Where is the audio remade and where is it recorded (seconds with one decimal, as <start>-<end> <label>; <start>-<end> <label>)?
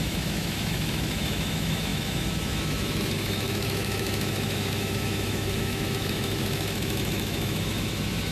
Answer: 0.0-8.3 remade